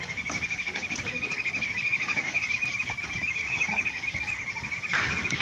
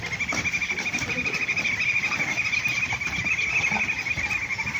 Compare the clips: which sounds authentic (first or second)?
second